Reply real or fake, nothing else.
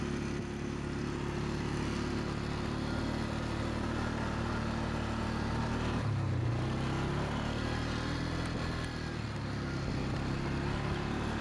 real